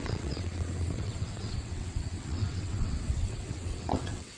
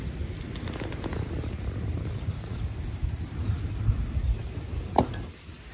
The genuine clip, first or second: second